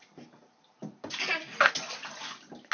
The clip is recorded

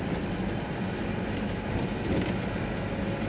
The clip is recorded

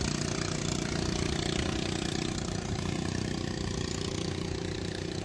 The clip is remade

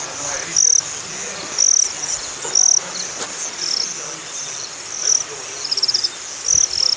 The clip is recorded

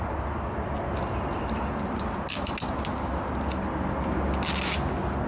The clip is recorded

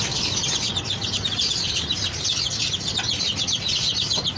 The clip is recorded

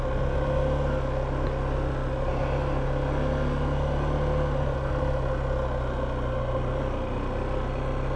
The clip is recorded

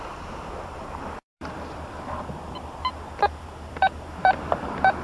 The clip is remade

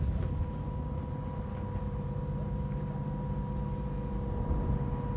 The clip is recorded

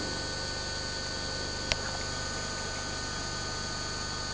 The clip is recorded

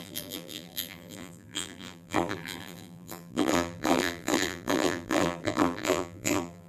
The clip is remade